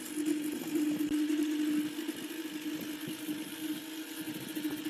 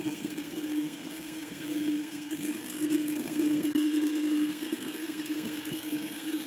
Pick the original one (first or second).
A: first